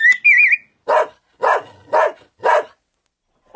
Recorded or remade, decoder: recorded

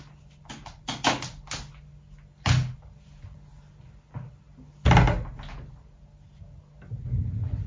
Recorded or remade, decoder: recorded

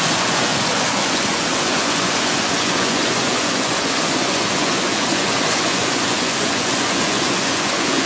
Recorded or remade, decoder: remade, vocoder, Vocos